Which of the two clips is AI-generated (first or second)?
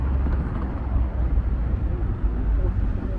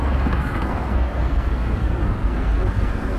second